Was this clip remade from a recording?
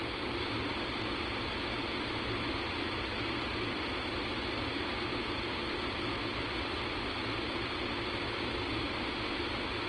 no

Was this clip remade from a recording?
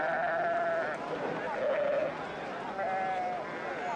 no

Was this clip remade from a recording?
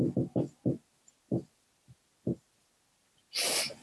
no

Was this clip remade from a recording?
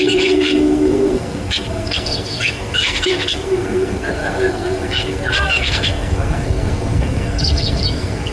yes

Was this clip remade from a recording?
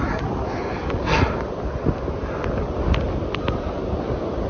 no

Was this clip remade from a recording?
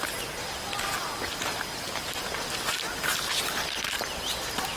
no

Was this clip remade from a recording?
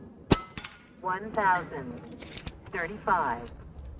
no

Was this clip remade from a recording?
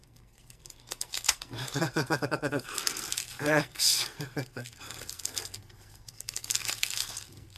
yes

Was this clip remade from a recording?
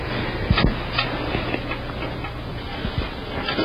no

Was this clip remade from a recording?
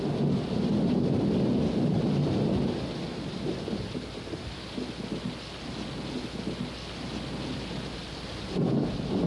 no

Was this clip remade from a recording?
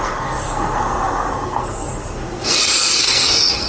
yes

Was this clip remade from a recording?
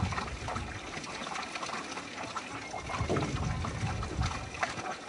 no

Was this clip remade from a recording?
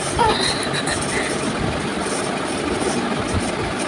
no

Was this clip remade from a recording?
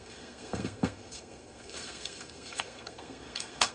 yes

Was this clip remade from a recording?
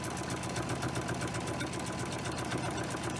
no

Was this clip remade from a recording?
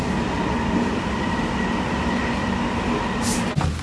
no